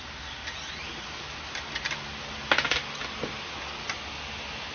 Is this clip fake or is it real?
real